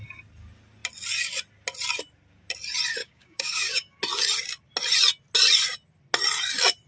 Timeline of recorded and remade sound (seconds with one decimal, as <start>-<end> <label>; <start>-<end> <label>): 0.0-3.0 recorded; 3.0-4.0 remade; 4.0-6.9 recorded